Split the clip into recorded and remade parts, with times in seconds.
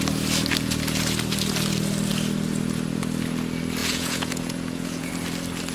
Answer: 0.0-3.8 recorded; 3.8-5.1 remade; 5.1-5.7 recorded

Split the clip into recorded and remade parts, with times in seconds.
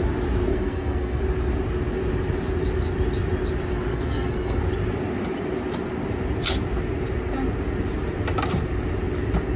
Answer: 0.0-0.5 recorded; 0.5-1.2 remade; 1.2-3.9 recorded; 3.9-4.6 remade; 4.6-9.6 recorded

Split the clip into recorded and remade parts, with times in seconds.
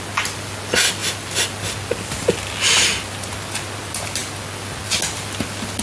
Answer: 0.0-5.8 recorded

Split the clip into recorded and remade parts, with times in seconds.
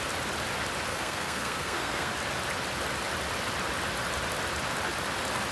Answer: 0.0-0.9 recorded; 0.9-2.1 remade; 2.1-5.5 recorded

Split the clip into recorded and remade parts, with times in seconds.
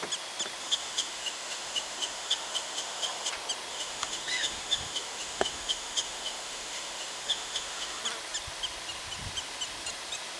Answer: 0.0-0.6 recorded; 0.6-3.3 remade; 3.3-3.7 recorded; 3.7-8.0 remade; 8.0-10.4 recorded